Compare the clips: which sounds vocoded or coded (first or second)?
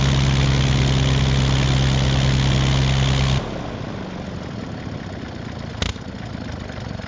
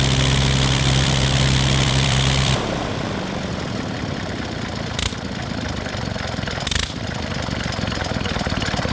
second